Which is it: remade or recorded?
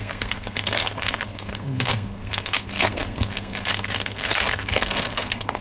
remade